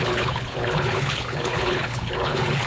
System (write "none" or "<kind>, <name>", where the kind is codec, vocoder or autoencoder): codec, HILCodec